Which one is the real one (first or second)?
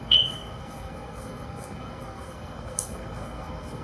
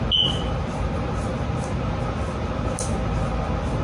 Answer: second